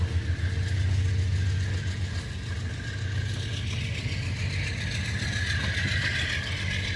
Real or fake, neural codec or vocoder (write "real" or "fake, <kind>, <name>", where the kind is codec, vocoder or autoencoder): real